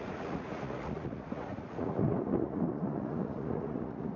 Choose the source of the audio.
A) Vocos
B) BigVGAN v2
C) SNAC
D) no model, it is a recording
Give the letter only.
A